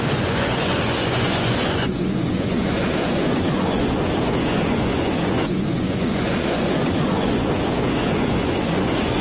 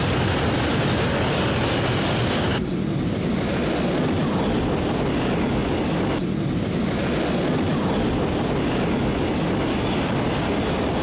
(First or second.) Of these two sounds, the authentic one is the second